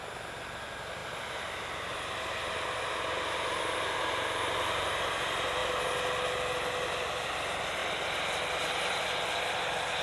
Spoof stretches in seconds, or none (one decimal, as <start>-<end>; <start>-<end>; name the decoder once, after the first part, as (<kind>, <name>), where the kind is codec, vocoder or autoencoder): none

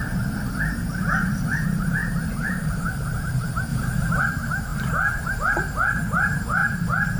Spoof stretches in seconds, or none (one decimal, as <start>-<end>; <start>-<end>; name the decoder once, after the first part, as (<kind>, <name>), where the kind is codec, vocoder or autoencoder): 0.0-7.2 (vocoder, BigVGAN v2)

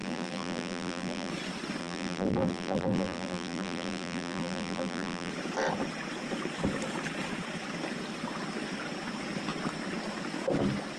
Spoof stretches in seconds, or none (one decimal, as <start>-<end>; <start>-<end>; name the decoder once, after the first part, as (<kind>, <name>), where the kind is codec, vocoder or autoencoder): 0.0-1.3 (vocoder, BigVGAN v2); 1.8-5.3

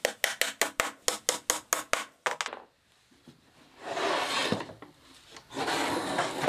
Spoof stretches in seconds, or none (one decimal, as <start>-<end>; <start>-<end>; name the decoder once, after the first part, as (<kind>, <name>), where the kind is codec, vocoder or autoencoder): 4.4-5.2 (vocoder, BigVGAN v2)

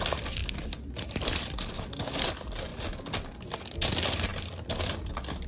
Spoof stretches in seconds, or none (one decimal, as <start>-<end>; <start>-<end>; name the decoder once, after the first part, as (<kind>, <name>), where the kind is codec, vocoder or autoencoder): 0.4-1.7 (vocoder, BigVGAN v2); 4.3-5.1

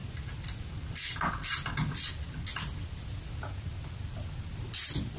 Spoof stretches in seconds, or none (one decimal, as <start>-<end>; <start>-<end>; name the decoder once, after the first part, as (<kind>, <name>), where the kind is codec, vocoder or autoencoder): none

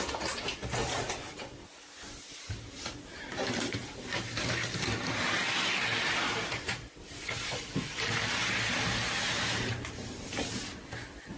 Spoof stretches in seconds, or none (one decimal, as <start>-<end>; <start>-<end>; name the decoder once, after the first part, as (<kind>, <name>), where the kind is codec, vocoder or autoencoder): 0.8-4.9 (vocoder, BigVGAN v2); 6.4-10.5

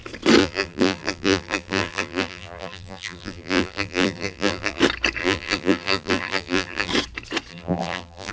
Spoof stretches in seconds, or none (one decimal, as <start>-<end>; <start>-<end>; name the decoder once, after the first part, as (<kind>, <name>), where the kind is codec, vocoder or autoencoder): 0.4-4.8 (vocoder, BigVGAN v2); 5.2-6.9; 7.5-8.3